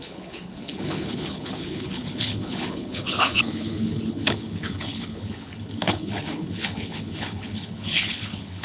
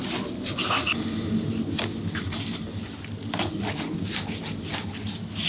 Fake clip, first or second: first